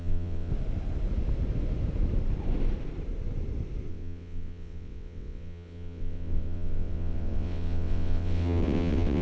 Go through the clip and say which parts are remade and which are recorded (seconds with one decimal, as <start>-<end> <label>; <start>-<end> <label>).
0.0-0.5 remade; 0.5-3.9 recorded; 3.9-9.2 remade